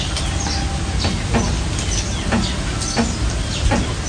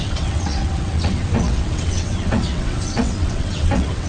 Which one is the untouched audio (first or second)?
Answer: first